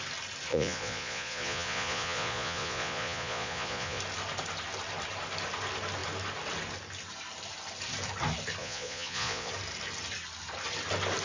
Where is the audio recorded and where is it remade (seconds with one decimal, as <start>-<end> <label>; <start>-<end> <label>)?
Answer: 0.0-0.5 recorded; 0.5-4.0 remade; 4.0-8.6 recorded; 8.6-9.5 remade; 9.5-11.2 recorded